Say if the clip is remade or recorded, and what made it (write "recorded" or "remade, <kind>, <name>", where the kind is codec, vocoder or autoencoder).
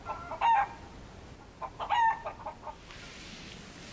recorded